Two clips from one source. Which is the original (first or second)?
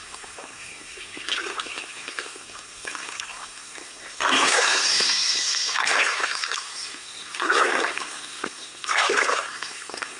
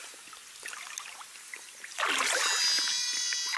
second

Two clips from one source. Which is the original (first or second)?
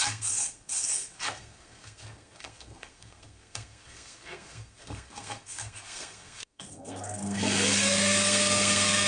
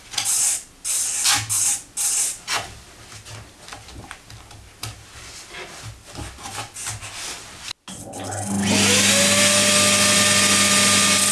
second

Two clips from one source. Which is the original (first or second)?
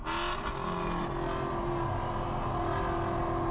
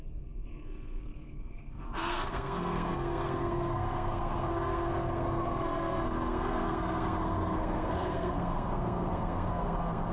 first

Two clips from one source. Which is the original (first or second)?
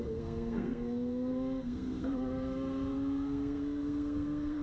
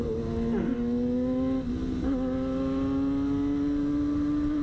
second